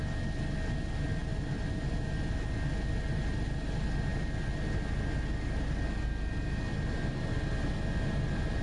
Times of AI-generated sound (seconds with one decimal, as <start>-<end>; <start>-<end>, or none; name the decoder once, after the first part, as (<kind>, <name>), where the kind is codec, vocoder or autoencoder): none

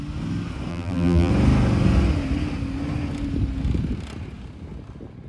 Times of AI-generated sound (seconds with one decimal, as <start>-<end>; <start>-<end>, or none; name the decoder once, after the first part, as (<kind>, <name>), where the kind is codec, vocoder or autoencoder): 0.7-1.3 (vocoder, BigVGAN v2)

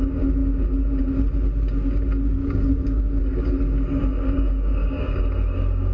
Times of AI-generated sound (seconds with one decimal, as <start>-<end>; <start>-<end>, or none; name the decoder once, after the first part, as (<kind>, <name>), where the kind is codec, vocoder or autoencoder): 2.4-3.2 (codec, DAC); 4.1-5.2

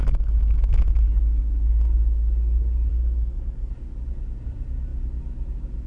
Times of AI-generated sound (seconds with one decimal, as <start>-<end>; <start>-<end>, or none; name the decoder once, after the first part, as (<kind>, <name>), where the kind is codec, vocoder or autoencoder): 0.0-0.9 (codec, DAC); 2.9-3.7